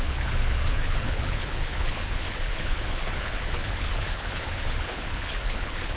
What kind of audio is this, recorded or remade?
remade